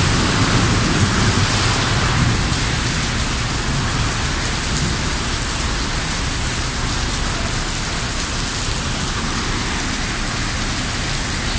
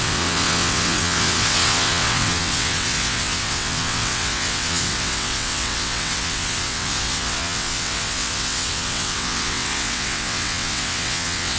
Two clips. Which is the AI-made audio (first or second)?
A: second